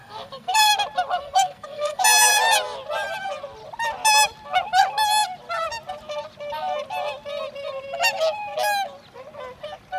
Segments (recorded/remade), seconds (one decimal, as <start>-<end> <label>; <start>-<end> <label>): 0.0-0.7 remade; 0.7-1.1 recorded; 1.1-2.0 remade; 2.0-10.0 recorded